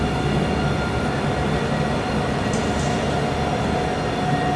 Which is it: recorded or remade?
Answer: recorded